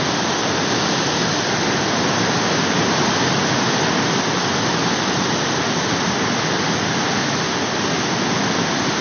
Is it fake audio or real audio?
real